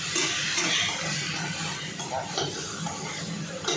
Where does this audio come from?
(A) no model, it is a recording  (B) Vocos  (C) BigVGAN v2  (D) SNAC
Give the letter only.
A